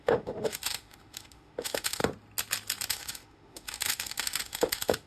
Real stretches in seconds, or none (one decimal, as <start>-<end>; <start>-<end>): 2.0-2.9